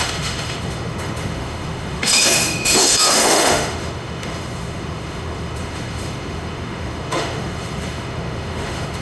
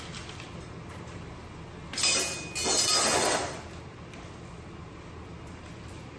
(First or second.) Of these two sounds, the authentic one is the second